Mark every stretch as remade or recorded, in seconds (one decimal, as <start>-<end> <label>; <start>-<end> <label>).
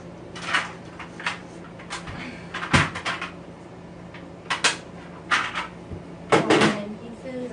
0.0-6.7 recorded; 6.7-7.5 remade